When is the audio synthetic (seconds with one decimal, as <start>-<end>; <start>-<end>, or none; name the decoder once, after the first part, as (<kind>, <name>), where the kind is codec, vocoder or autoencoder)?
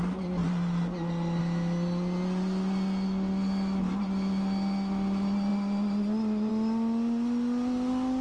none